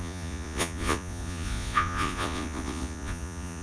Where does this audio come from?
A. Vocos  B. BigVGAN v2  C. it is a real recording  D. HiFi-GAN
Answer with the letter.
A